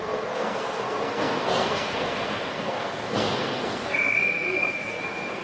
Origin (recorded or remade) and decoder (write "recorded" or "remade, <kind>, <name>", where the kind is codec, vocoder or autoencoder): remade, codec, SNAC